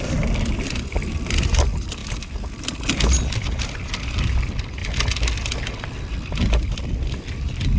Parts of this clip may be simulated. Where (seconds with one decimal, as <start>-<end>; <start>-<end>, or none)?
0.0-2.0; 3.6-4.8; 7.1-7.8